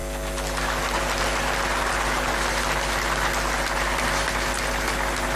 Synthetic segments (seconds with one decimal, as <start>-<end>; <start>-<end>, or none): none